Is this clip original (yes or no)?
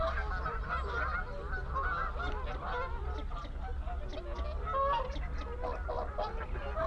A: yes